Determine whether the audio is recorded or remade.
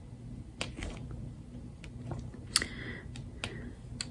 recorded